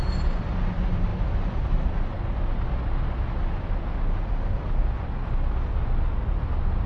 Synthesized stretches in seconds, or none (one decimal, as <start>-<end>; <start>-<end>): none